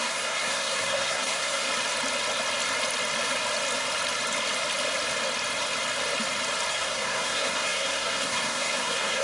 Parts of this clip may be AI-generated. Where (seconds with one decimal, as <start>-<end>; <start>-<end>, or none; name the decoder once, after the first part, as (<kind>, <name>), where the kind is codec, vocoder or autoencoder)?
0.0-1.7 (codec, SNAC); 6.7-9.2